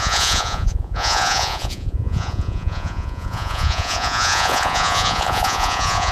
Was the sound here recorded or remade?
remade